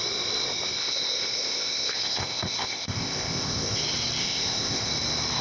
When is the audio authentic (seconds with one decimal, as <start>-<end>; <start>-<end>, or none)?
0.0-0.8; 3.8-4.2; 4.9-5.4